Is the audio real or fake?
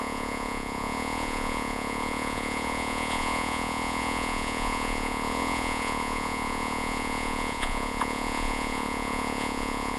fake